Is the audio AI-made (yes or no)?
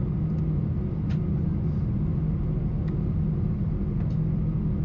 no